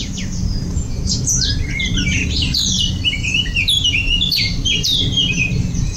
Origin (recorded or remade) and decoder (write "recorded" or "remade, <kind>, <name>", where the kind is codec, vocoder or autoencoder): remade, vocoder, BigVGAN v2